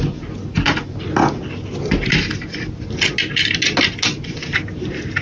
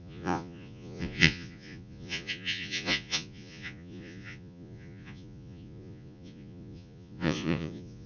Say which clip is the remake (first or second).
second